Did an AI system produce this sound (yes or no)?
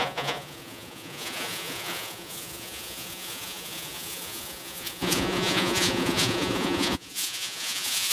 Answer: yes